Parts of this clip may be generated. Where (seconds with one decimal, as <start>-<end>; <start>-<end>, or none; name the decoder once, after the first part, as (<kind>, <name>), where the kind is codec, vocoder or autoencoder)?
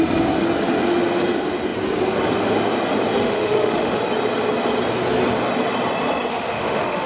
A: 3.2-4.0 (autoencoder, DAC-VAE); 6.3-7.1